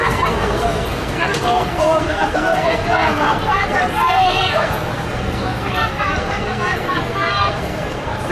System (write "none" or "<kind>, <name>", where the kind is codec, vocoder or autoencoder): codec, SNAC